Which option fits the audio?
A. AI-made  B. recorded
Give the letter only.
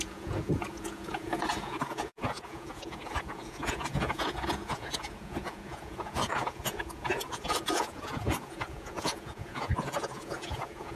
A